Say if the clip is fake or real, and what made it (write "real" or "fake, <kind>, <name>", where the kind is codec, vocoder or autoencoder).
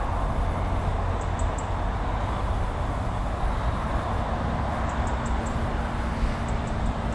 real